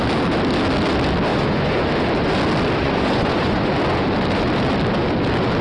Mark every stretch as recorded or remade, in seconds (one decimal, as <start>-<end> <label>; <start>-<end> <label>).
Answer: 0.0-1.3 recorded; 1.3-1.9 remade; 1.9-2.8 recorded; 2.8-3.7 remade; 3.7-5.6 recorded